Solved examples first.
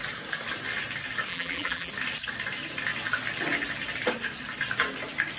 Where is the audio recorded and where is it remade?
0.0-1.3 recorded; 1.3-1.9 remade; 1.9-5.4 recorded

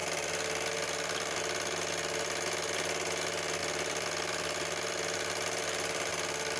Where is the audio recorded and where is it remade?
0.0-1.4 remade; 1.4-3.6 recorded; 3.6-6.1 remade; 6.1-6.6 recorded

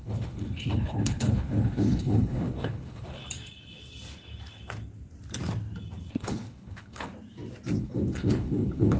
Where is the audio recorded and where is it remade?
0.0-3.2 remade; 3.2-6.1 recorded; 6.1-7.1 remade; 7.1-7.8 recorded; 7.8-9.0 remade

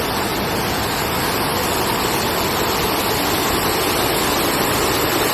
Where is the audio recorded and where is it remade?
0.0-5.3 recorded

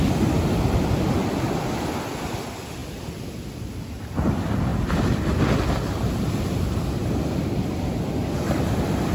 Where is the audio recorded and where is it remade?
0.0-4.7 remade; 4.7-6.1 recorded; 6.1-9.1 remade

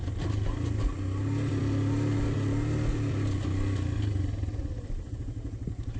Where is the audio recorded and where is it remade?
0.0-6.0 recorded